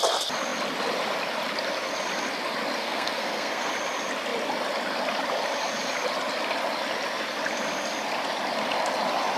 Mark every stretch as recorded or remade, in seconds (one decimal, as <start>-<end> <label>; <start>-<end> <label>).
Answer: 0.0-2.8 recorded; 2.8-3.7 remade; 3.7-9.4 recorded